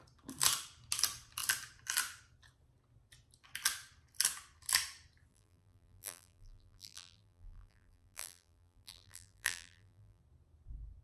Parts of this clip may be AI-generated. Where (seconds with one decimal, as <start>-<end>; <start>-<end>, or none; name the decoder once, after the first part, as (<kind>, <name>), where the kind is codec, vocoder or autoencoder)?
5.3-10.2 (vocoder, BigVGAN v2)